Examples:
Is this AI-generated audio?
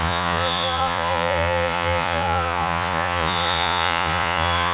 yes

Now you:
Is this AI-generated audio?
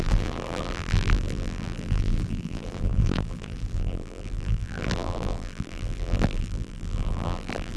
yes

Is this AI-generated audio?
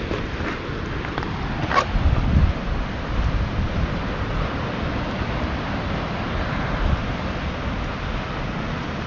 no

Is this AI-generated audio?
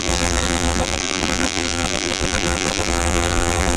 yes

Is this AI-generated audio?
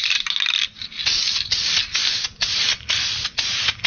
no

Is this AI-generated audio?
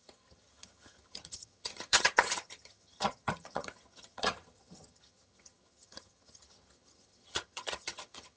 yes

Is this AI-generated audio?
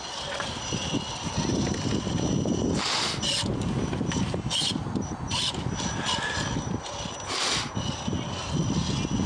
no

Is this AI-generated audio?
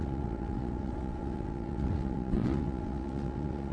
yes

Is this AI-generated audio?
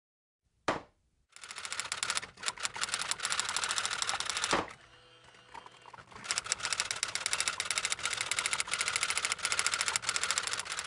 no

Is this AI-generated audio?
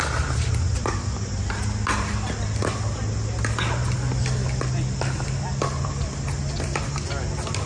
no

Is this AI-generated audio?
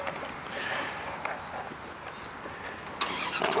no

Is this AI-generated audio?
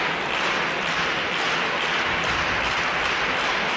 no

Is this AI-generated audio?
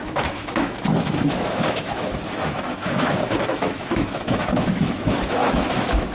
yes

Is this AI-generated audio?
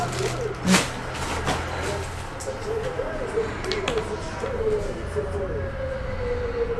no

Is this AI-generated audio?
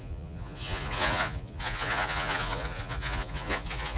yes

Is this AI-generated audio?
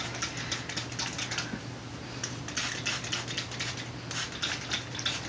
no